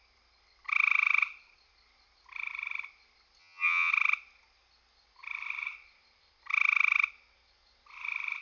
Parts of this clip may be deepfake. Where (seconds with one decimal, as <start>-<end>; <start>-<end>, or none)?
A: 3.4-3.9